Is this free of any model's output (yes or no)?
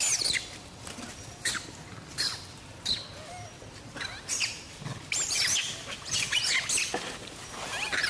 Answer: yes